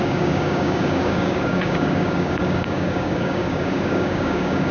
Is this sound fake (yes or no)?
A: yes